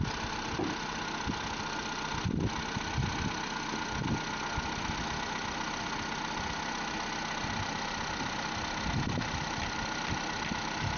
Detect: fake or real real